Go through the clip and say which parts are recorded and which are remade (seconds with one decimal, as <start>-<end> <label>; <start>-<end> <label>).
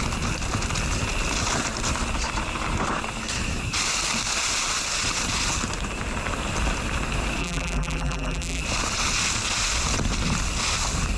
0.0-7.4 recorded; 7.4-8.6 remade; 8.6-11.2 recorded